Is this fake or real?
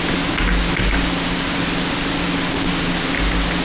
real